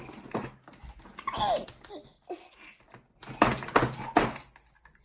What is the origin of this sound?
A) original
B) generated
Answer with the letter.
A